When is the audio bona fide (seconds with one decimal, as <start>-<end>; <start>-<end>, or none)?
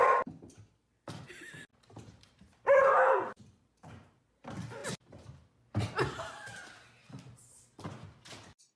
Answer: 0.0-1.7; 4.2-8.8